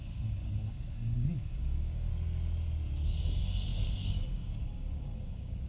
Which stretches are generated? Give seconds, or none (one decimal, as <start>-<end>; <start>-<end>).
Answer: 0.0-2.1; 3.2-5.7